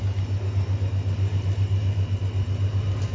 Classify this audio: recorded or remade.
recorded